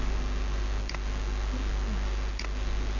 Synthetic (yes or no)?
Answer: no